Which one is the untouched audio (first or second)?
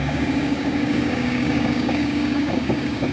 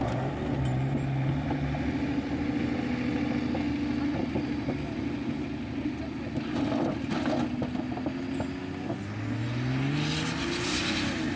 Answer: second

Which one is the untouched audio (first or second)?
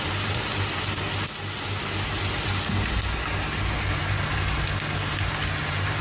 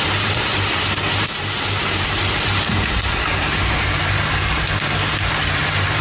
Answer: first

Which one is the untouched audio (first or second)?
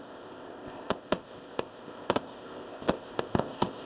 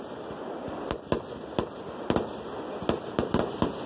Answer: second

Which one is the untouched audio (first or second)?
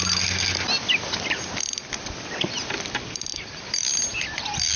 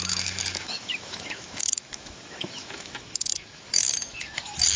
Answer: first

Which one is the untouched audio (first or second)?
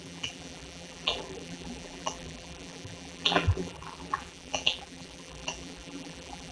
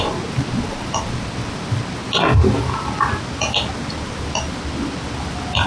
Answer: second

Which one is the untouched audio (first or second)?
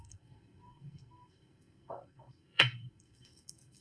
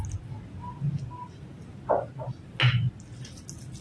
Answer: second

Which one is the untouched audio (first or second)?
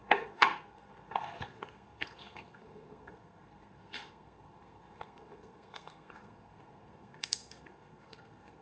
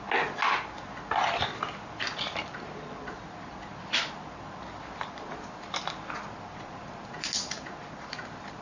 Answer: second